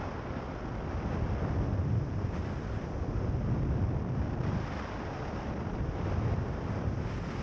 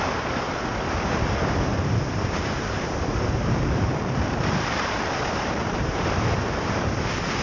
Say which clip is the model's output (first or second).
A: second